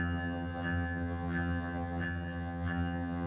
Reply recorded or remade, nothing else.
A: remade